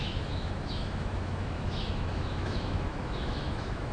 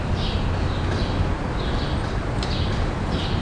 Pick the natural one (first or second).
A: second